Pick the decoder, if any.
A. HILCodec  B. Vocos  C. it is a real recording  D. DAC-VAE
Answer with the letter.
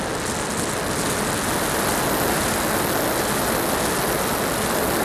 C